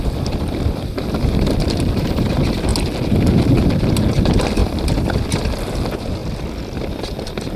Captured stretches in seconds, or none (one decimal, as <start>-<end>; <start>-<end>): 2.7-4.1; 6.2-7.6